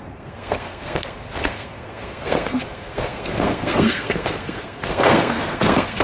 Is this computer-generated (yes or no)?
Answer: yes